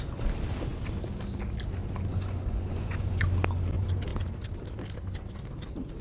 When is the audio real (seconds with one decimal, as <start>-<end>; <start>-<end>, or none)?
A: 0.0-2.1; 3.2-6.0